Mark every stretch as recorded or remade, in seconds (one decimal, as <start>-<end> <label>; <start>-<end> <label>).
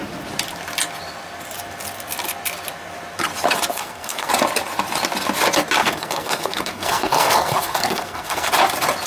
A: 0.0-3.7 recorded; 3.7-4.3 remade; 4.3-5.8 recorded; 5.8-8.5 remade; 8.5-9.1 recorded